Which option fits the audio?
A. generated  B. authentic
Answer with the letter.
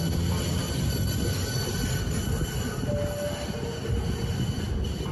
B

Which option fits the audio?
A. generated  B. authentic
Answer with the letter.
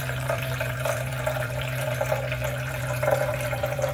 A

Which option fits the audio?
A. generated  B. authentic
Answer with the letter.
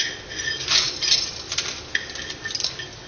B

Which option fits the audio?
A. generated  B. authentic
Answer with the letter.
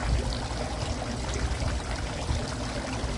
A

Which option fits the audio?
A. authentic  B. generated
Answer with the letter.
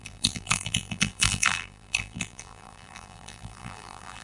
B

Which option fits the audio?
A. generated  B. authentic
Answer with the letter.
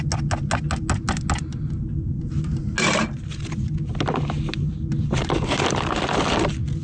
B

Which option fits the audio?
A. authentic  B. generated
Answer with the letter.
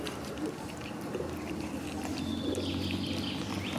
A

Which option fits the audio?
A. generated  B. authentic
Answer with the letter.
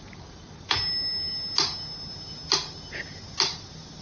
B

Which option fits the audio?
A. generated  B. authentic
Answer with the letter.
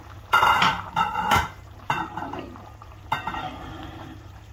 A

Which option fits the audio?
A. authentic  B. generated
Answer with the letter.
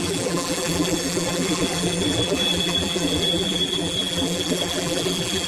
B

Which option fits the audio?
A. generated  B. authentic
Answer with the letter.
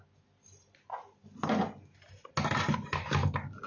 B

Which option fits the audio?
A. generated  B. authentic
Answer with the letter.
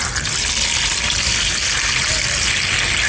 B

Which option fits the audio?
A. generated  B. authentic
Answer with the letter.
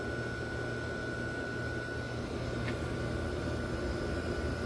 B